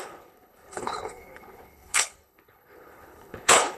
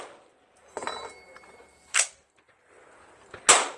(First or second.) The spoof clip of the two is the first